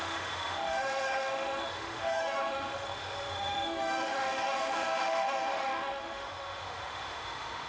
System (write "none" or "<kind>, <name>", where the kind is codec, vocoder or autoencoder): autoencoder, DAC-VAE